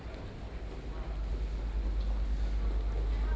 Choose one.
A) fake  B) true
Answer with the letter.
B